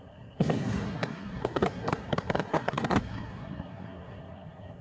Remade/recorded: remade